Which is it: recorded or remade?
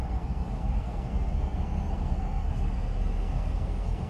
remade